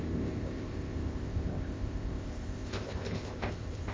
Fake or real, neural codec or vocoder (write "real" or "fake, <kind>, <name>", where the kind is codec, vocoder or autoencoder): fake, codec, ZipCodec